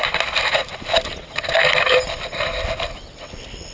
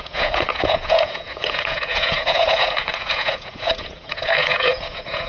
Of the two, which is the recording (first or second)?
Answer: first